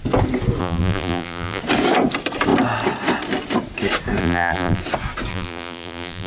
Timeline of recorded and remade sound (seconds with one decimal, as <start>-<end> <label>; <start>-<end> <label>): 0.0-0.6 recorded; 0.6-1.6 remade; 1.6-4.2 recorded; 4.2-4.8 remade; 4.8-5.3 recorded; 5.3-6.3 remade